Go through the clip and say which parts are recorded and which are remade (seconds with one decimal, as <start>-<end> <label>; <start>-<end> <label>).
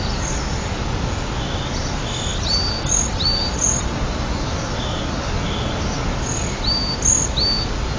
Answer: 0.0-8.0 recorded